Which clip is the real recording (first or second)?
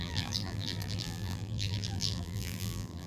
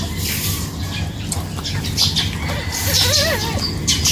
second